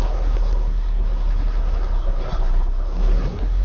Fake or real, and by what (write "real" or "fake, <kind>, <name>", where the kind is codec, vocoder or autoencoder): fake, codec, SNAC